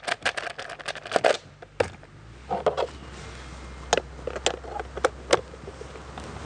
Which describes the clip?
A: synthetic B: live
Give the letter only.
B